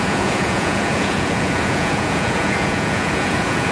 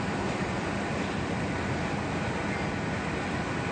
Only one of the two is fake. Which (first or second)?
first